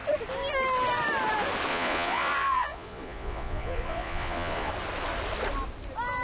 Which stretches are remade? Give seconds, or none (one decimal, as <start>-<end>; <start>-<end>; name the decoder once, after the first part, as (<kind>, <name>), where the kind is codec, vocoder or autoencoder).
1.7-4.7 (vocoder, Vocos)